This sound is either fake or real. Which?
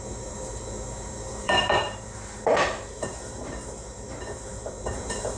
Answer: fake